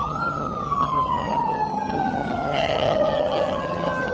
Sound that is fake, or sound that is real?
fake